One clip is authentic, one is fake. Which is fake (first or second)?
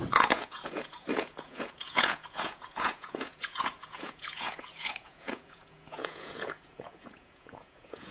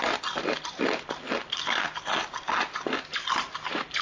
first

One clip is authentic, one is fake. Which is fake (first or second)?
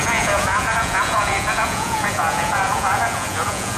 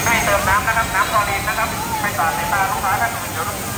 first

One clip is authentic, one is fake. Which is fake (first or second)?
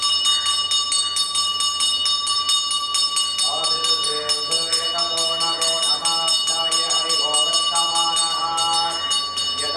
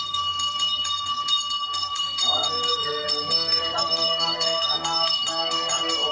second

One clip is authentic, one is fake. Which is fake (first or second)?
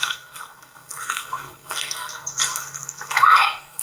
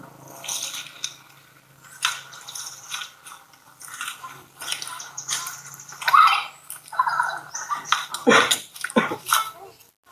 first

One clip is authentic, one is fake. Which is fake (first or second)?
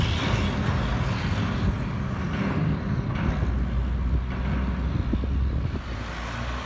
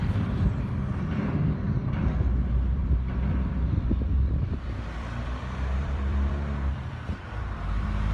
second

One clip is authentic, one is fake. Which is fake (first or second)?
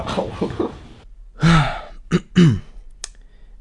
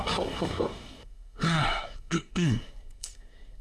second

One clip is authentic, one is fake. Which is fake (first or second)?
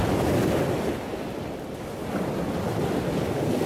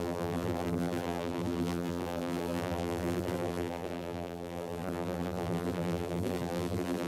second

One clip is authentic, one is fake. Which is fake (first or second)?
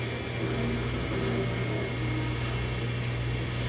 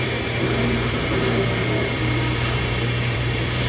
second